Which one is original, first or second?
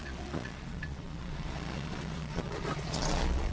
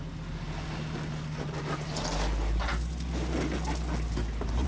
second